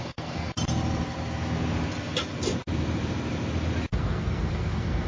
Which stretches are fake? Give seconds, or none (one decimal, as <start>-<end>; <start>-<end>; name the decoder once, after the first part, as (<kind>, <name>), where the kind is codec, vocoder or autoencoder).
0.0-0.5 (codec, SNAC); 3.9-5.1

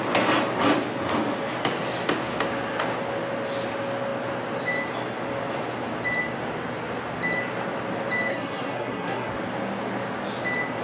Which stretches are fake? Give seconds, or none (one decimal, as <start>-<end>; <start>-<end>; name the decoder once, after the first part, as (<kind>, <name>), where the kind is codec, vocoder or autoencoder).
8.3-9.3 (codec, SNAC)

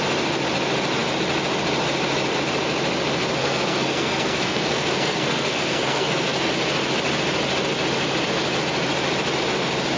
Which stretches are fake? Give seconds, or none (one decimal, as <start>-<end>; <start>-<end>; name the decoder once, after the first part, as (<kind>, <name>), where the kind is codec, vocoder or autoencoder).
3.4-6.5 (codec, SNAC)